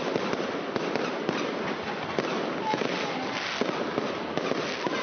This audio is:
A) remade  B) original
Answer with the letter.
B